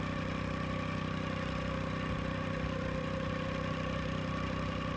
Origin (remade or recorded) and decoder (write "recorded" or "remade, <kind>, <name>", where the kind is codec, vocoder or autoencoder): recorded